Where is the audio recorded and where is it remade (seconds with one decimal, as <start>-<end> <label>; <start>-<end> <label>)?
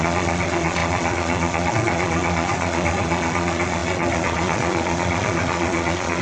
0.0-6.2 remade